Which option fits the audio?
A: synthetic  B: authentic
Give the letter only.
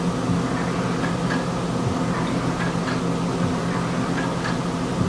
B